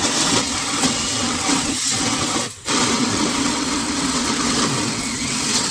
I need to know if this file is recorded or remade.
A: remade